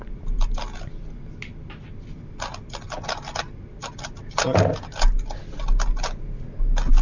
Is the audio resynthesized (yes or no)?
no